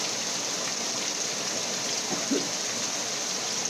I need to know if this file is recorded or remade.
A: recorded